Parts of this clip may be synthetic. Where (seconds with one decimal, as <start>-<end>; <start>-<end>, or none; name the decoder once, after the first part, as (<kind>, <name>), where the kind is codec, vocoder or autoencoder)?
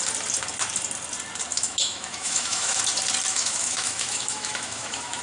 1.5-2.8 (autoencoder, DAC-VAE); 3.3-5.2